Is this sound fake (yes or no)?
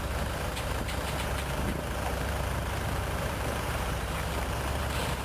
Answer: yes